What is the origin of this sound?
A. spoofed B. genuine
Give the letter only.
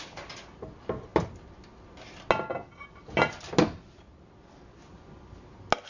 B